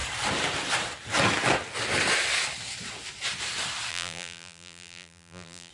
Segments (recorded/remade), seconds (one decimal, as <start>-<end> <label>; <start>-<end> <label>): 0.0-3.9 recorded; 3.9-5.7 remade